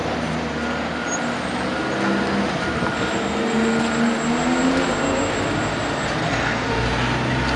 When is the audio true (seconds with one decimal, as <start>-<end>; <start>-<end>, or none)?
0.0-6.2; 6.7-7.6